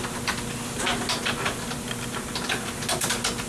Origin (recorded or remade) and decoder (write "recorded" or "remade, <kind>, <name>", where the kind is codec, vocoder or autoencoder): recorded